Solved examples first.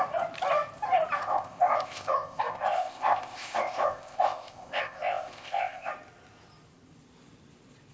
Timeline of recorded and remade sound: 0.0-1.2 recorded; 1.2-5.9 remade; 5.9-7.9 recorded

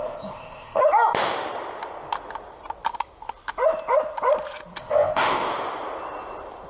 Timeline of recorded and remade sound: 0.0-0.8 remade; 0.8-4.8 recorded; 4.8-5.5 remade; 5.5-6.7 recorded

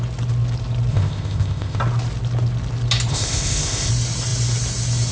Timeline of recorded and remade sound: 0.0-0.9 recorded; 0.9-1.8 remade; 1.8-3.1 recorded; 3.1-3.9 remade; 3.9-5.1 recorded